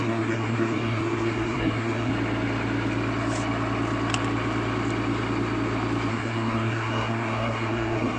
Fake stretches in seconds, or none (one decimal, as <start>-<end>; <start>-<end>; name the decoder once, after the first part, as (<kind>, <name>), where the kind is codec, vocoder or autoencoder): 0.0-2.1 (codec, SNAC); 6.1-8.2